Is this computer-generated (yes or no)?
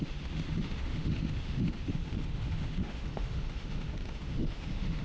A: yes